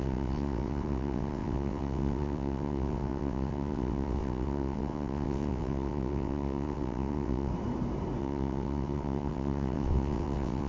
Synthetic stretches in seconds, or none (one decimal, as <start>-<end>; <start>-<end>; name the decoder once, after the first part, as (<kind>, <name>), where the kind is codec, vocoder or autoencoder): 0.0-7.5 (vocoder, WaveNeXt); 8.2-10.7

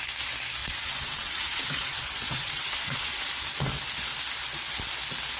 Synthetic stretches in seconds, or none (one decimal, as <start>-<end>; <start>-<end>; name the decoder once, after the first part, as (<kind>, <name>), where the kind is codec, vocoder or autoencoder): 0.6-3.3 (vocoder, WaveNeXt)

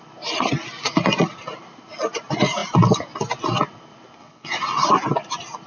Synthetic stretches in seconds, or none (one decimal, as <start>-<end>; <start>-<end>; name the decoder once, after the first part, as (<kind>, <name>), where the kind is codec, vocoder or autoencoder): 4.2-4.9 (vocoder, WaveNeXt)

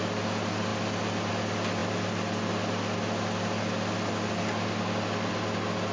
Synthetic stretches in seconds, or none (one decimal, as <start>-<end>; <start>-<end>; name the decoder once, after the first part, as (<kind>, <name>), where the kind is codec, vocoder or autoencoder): none

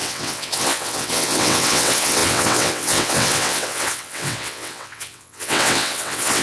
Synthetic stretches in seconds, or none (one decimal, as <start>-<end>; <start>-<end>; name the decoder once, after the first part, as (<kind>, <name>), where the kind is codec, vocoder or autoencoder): 0.0-6.4 (vocoder, WaveNeXt)